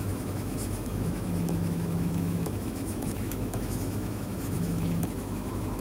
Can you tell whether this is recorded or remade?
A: remade